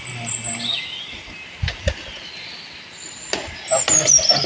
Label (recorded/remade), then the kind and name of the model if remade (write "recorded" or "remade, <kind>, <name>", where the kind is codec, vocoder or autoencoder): recorded